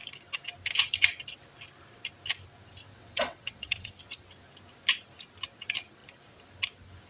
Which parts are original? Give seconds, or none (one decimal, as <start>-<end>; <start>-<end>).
0.0-2.9; 3.9-7.1